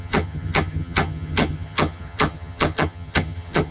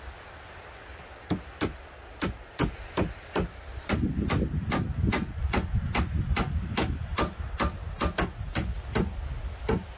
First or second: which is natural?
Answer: second